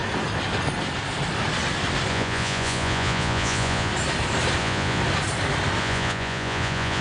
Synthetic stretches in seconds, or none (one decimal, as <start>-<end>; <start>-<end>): 2.1-3.9; 4.6-5.0; 5.8-7.0